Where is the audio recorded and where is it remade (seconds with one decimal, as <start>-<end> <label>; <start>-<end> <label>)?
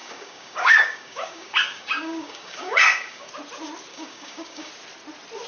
0.0-3.3 remade; 3.3-3.9 recorded; 3.9-4.7 remade; 4.7-5.5 recorded